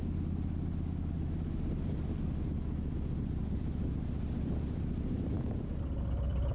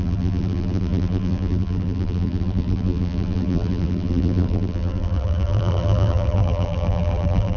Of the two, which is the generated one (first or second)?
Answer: second